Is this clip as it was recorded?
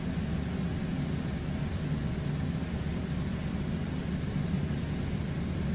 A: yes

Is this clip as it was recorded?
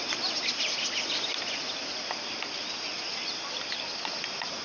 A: yes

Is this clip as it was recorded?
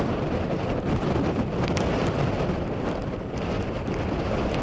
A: yes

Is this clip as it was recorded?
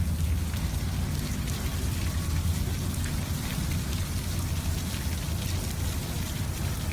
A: yes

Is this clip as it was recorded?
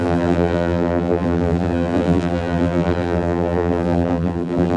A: no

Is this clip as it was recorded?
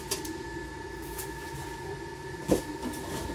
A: yes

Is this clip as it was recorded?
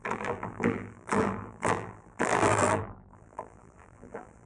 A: no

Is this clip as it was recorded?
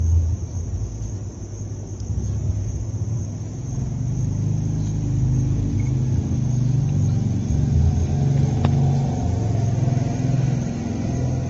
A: yes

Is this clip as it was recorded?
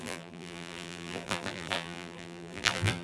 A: no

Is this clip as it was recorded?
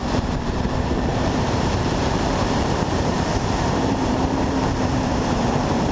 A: no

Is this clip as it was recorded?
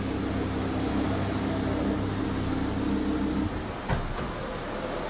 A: yes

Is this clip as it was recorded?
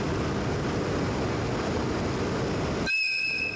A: yes